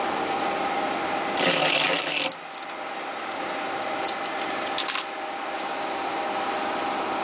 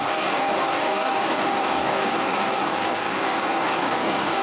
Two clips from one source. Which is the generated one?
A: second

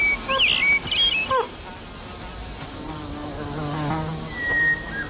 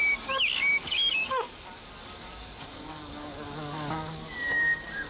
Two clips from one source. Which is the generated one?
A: second